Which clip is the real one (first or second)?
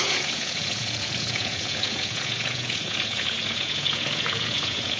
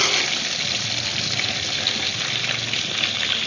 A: second